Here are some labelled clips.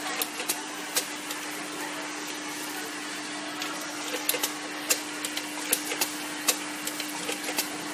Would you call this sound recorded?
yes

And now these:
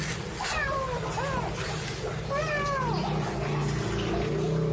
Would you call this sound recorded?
yes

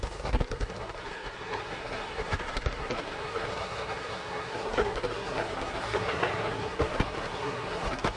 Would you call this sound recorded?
no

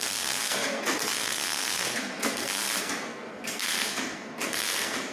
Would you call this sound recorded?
no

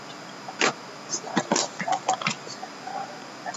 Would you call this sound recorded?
yes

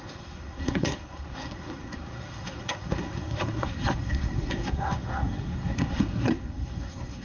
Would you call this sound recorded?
no